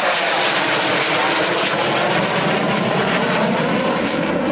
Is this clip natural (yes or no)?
yes